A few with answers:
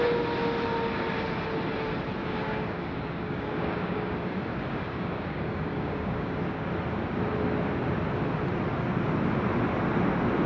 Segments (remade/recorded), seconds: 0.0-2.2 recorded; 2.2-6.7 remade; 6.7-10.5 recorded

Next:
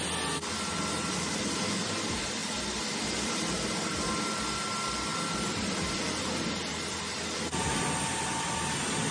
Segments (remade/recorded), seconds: 0.0-9.1 recorded